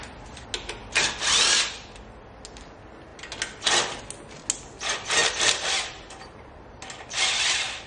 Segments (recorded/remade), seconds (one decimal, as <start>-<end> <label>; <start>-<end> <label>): 0.0-5.2 recorded; 5.2-6.8 remade; 6.8-7.9 recorded